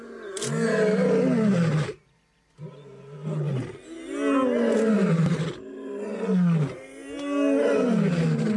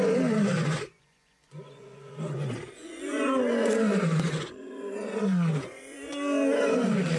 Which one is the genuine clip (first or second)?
first